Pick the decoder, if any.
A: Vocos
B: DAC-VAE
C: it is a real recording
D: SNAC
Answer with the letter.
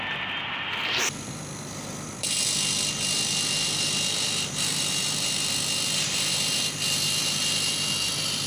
C